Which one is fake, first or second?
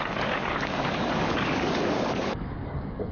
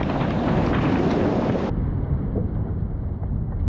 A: first